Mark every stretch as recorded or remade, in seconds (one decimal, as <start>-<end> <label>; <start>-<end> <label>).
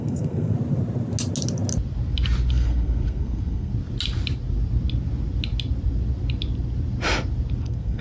0.0-0.5 remade; 0.5-2.5 recorded; 2.5-3.7 remade; 3.7-7.6 recorded; 7.6-8.0 remade